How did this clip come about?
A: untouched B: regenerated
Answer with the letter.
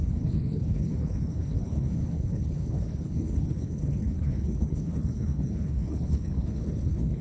B